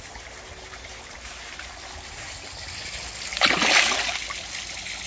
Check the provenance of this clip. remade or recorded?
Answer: recorded